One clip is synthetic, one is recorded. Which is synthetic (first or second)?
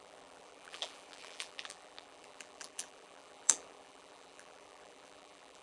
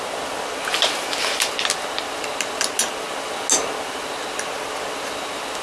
first